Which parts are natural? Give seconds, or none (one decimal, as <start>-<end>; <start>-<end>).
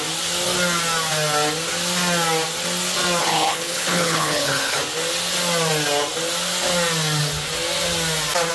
0.0-3.2; 4.8-8.5